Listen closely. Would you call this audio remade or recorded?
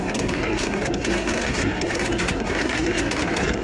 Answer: remade